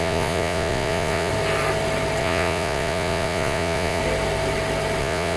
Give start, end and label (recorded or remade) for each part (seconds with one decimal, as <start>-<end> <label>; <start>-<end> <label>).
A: 0.0-1.3 remade; 1.3-2.2 recorded; 2.2-4.0 remade; 4.0-5.0 recorded; 5.0-5.4 remade